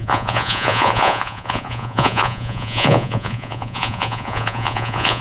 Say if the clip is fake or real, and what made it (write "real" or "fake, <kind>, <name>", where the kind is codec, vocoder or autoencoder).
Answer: fake, vocoder, Vocos